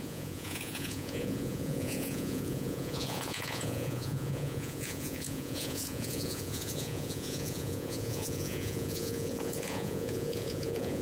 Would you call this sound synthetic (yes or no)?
yes